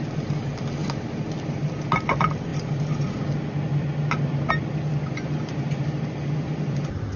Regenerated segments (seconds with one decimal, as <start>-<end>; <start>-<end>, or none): none